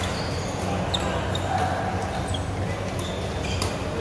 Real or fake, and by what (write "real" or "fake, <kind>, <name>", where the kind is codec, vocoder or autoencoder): real